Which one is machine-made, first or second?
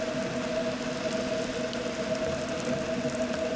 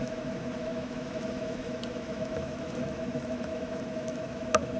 second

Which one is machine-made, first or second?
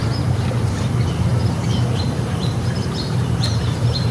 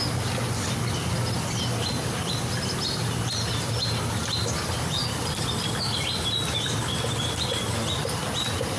first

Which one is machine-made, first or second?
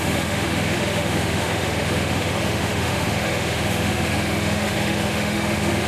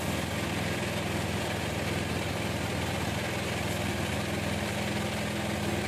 first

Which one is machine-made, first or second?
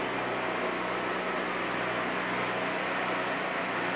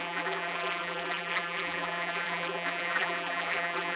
second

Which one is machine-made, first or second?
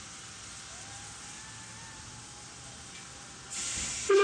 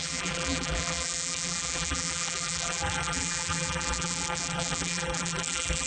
second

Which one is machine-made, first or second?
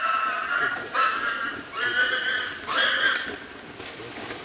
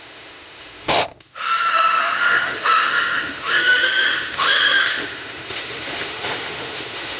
second